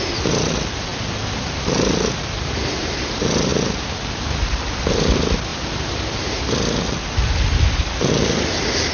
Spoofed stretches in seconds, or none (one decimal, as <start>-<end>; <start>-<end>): 0.0-0.9; 2.1-8.9